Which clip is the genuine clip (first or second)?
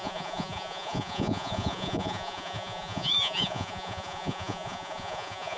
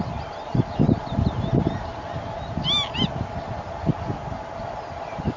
second